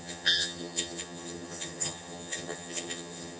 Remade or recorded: remade